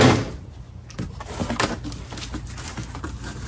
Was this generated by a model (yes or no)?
no